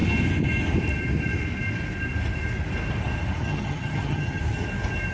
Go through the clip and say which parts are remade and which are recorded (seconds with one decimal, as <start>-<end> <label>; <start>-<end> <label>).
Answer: 0.0-3.4 recorded; 3.4-4.4 remade; 4.4-5.1 recorded